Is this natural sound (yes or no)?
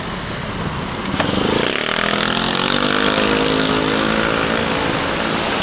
yes